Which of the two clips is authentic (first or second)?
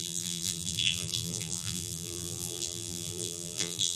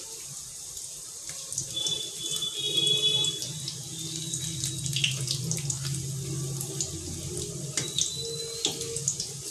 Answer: second